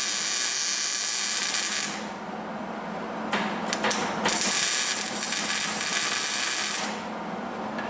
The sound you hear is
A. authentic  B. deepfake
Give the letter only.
A